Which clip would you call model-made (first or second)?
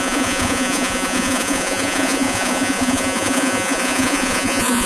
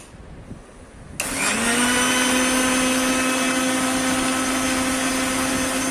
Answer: first